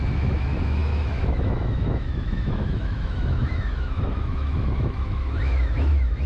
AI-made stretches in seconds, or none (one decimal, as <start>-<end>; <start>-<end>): 0.0-6.3